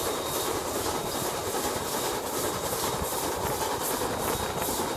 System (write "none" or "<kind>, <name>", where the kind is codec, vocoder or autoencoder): none